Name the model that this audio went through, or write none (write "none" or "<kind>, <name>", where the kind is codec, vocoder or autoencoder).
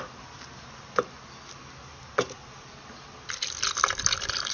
none